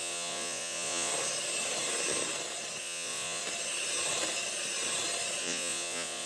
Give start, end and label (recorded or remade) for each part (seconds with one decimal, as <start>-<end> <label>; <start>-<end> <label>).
0.0-1.1 remade; 1.1-2.8 recorded; 2.8-3.4 remade; 3.4-5.4 recorded; 5.4-6.3 remade